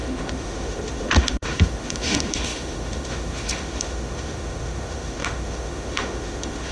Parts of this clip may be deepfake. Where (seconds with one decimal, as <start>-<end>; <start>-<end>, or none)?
0.0-6.7